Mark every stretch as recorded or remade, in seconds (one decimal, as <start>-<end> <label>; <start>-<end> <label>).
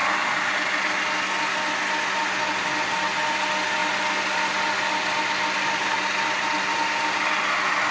0.0-7.9 recorded